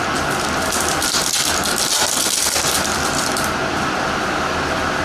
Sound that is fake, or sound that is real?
real